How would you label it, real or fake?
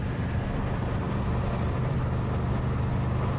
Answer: real